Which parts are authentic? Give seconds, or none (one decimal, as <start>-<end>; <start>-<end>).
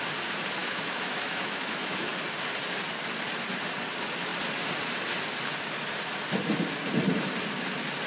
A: 0.0-0.6; 2.1-8.1